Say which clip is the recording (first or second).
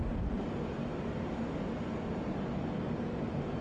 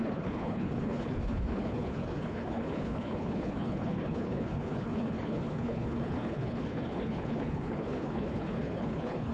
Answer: first